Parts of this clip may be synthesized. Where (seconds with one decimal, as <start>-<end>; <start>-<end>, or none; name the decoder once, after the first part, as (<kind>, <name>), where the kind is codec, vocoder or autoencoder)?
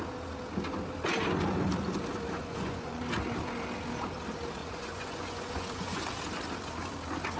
2.4-3.0 (vocoder, Vocos); 4.6-6.0